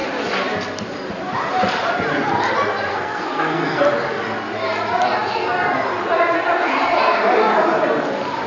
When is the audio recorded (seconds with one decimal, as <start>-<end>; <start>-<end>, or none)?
0.0-2.9; 3.8-8.5